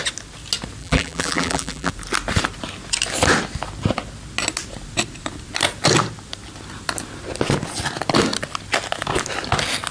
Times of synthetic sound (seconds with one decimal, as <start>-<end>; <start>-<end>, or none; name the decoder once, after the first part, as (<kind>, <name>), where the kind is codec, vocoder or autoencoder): 0.8-1.9 (vocoder, BigVGAN v2)